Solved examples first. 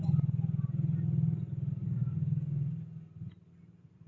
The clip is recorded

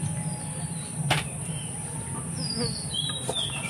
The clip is recorded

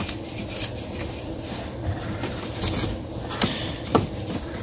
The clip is recorded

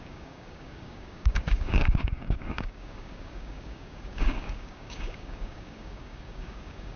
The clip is remade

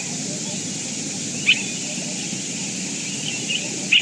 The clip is recorded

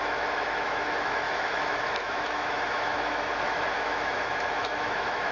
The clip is remade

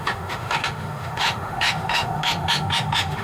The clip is remade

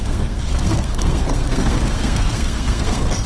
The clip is remade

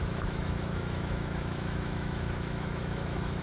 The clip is remade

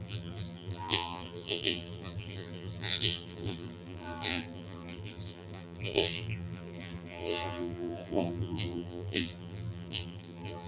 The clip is remade